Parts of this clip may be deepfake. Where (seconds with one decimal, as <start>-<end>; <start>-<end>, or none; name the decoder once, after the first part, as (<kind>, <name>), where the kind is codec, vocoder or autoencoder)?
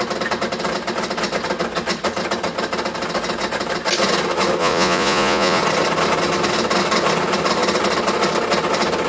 4.6-5.6 (vocoder, Vocos)